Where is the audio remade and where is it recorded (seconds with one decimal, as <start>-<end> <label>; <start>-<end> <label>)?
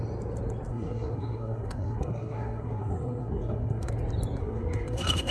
0.0-0.7 recorded; 0.7-3.9 remade; 3.9-4.4 recorded; 4.4-5.3 remade